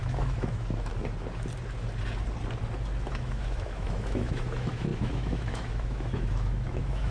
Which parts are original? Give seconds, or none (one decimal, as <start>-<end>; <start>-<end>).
0.9-3.1